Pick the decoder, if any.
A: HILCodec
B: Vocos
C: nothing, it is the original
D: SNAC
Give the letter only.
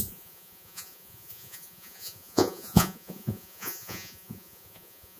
B